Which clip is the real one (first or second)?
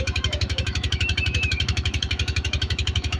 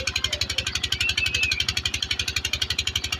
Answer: second